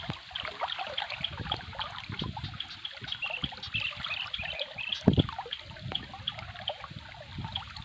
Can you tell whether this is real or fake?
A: real